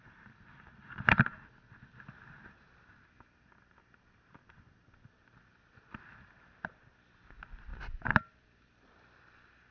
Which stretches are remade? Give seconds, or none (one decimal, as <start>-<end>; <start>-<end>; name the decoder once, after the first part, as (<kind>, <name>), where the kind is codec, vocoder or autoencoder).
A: none